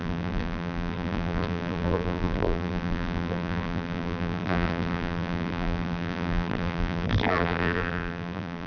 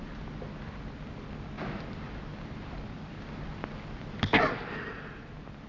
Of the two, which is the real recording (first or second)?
second